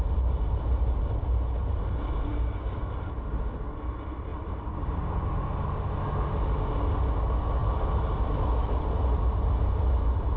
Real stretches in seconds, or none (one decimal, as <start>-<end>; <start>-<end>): 0.0-2.2; 2.8-10.4